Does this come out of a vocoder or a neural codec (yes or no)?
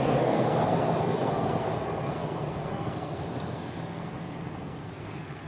yes